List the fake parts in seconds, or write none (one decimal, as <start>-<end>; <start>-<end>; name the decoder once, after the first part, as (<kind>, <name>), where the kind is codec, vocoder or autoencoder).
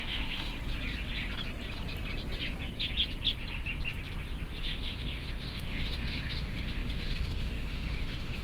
0.0-0.5 (autoencoder, DAC-VAE); 4.6-8.4